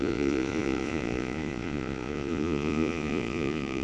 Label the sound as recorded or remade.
remade